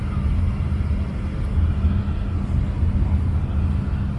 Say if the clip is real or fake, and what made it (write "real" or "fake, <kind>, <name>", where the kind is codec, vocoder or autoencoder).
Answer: real